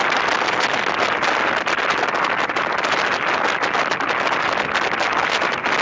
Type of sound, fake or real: real